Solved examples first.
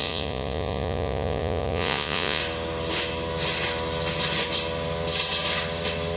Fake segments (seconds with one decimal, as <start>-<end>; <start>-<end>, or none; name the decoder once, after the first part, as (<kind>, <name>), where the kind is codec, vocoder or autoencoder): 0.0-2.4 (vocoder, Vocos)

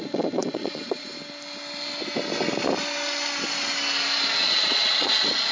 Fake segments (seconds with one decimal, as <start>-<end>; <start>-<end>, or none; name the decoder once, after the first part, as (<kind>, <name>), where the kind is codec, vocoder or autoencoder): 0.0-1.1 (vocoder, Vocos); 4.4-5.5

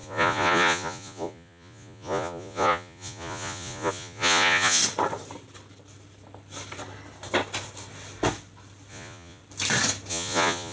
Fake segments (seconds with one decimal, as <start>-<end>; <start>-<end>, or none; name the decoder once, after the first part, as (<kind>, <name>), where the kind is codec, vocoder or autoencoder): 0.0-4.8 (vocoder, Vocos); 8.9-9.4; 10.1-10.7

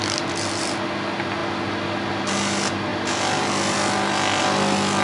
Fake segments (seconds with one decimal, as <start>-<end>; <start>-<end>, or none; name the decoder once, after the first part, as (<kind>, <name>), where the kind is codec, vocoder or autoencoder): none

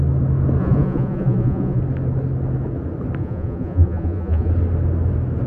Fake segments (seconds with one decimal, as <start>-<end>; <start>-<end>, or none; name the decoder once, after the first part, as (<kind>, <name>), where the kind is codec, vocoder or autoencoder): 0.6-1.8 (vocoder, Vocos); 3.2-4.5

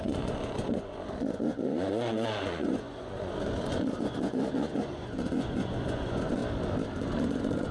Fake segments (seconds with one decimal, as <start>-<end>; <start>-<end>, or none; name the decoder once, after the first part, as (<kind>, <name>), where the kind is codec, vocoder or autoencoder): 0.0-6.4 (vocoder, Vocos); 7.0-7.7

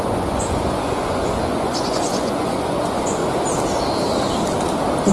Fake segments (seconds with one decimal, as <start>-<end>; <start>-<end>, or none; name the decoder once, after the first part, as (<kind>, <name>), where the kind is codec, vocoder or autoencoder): 0.0-3.2 (vocoder, Vocos)

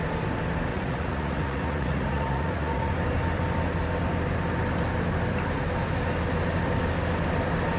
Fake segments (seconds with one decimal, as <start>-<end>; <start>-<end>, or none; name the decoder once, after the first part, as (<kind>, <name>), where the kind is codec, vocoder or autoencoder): 0.7-2.9 (vocoder, Vocos)